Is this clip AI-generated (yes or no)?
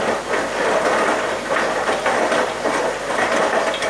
no